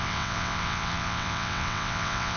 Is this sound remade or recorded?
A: remade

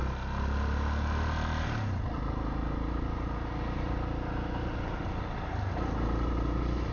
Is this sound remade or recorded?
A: recorded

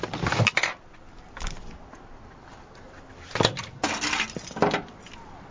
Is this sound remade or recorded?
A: recorded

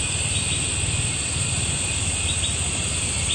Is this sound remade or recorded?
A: recorded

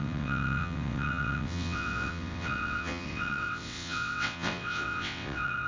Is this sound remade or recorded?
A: remade